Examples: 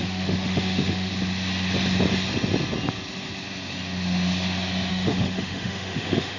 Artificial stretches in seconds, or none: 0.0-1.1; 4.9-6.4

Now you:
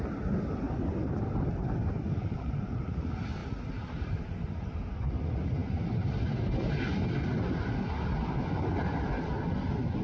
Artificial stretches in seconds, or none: none